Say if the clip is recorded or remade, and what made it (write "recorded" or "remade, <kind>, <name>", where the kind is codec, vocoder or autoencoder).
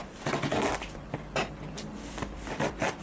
recorded